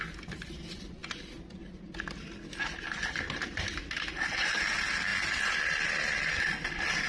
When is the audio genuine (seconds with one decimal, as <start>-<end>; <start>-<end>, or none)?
0.0-7.1

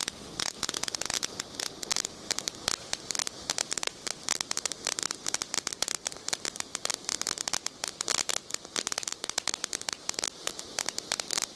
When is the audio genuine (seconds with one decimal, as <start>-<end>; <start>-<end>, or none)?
0.0-3.6; 4.6-9.1; 10.5-11.6

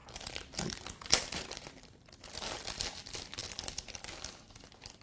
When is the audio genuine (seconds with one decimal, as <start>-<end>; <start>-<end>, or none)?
3.0-3.4; 4.0-5.0